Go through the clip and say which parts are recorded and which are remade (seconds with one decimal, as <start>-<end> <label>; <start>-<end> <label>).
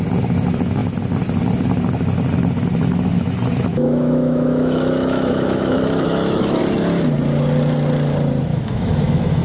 0.0-3.7 recorded; 3.7-6.6 remade; 6.6-8.5 recorded; 8.5-9.4 remade